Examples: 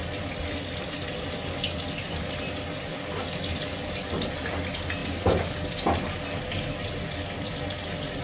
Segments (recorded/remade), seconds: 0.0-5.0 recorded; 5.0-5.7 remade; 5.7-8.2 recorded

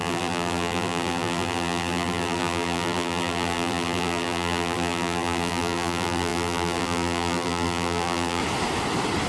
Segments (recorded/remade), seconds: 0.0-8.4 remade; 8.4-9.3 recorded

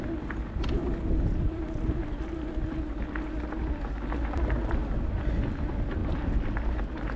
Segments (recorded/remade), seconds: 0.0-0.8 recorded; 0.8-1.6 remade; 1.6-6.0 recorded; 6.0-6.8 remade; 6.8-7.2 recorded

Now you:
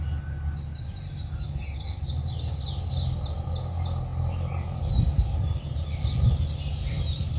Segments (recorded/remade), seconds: 0.0-4.1 recorded; 4.1-6.4 remade; 6.4-7.4 recorded

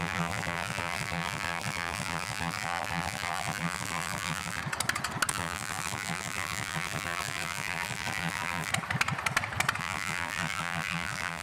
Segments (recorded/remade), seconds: 0.0-4.6 remade; 4.6-5.3 recorded; 5.3-8.7 remade; 8.7-9.8 recorded; 9.8-11.4 remade